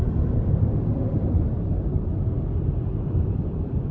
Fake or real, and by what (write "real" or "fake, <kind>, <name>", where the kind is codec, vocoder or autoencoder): fake, vocoder, BigVGAN v2